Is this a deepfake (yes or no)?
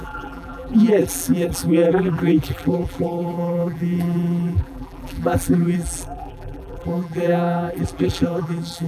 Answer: yes